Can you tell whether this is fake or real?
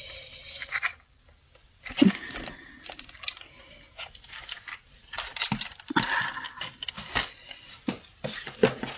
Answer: real